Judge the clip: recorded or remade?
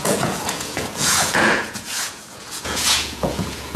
remade